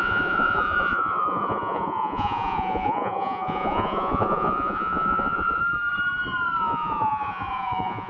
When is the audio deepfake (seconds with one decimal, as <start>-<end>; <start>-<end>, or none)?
0.0-5.6; 6.6-8.1